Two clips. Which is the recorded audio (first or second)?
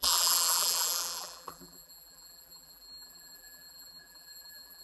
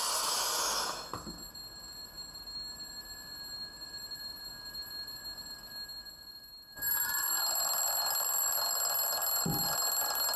second